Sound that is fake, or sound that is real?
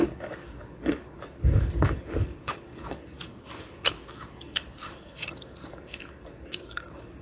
fake